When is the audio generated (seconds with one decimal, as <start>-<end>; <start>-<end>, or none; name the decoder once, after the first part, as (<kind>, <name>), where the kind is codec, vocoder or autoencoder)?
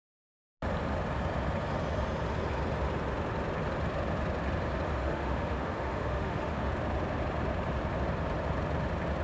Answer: 5.0-6.7 (autoencoder, DAC-VAE)